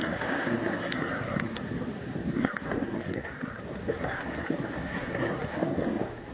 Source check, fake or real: fake